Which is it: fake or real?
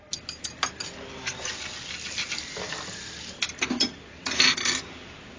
real